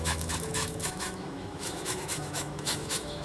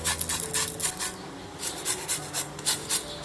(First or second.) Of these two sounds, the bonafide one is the second